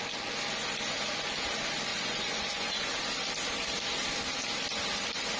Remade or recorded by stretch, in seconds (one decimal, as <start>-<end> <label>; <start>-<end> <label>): 0.0-1.9 recorded; 1.9-2.9 remade; 2.9-5.4 recorded